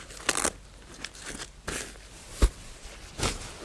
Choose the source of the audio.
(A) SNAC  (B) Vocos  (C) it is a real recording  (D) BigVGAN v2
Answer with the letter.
C